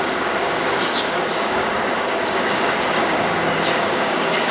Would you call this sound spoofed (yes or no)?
yes